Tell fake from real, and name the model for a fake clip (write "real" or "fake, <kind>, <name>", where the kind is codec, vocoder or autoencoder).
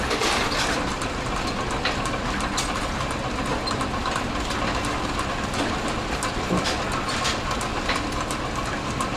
real